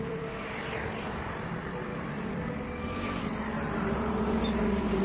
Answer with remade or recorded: recorded